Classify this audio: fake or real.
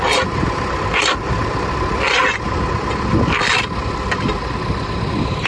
real